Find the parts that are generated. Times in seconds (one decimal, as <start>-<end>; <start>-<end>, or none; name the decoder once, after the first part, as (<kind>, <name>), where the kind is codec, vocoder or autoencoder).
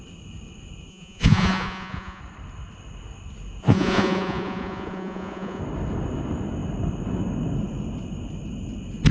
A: 0.9-2.2 (vocoder, Vocos); 3.6-5.6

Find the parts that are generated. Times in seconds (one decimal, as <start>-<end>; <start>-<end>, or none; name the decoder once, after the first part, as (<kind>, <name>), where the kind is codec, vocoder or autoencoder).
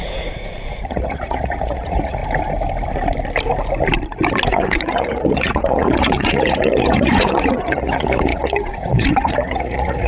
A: 0.0-2.2 (vocoder, Vocos); 4.5-10.1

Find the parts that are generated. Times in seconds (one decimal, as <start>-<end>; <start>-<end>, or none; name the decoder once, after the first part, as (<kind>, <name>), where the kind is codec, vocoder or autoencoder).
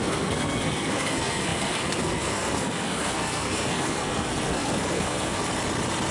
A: 0.0-5.4 (codec, SNAC)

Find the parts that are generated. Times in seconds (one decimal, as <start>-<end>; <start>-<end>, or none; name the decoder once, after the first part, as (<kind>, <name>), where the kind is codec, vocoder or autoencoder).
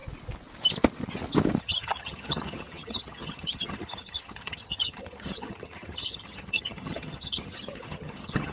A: 1.6-8.5 (vocoder, HiFi-GAN)